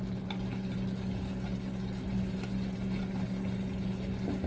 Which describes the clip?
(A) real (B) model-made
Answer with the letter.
A